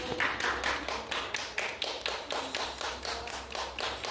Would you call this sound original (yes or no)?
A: yes